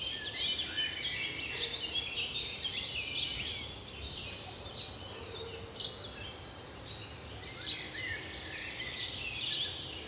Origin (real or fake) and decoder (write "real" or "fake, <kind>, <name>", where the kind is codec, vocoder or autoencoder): real